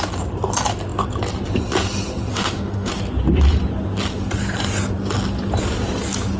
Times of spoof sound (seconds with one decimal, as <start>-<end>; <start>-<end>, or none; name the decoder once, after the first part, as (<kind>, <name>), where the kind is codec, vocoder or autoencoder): 2.3-2.9 (autoencoder, DAC-VAE)